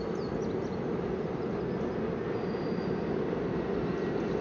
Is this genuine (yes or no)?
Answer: yes